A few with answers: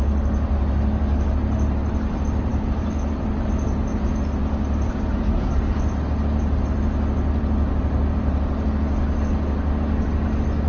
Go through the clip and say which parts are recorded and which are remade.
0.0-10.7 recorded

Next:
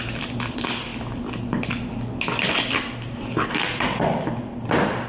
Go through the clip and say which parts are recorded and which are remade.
0.0-5.1 recorded

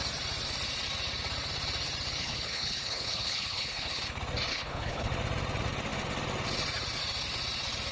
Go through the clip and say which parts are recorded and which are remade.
0.0-2.2 recorded; 2.2-4.0 remade; 4.0-4.5 recorded; 4.5-5.1 remade; 5.1-7.9 recorded

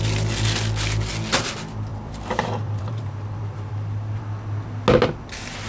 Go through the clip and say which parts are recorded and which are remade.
0.0-1.9 recorded; 1.9-4.2 remade; 4.2-5.7 recorded

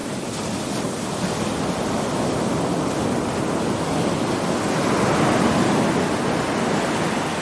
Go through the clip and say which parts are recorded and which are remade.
0.0-7.4 recorded